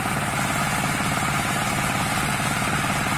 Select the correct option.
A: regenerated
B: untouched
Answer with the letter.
B